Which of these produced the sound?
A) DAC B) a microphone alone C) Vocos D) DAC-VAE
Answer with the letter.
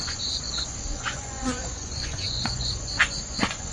C